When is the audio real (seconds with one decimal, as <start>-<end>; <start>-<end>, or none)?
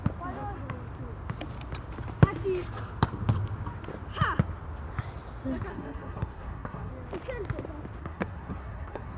0.0-5.7; 6.9-8.0